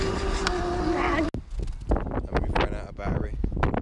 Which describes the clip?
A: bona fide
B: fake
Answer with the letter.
A